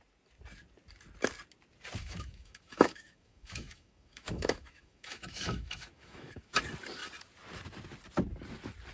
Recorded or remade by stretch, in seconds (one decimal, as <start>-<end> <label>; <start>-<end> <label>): 0.0-2.0 recorded; 2.0-6.6 remade; 6.6-8.9 recorded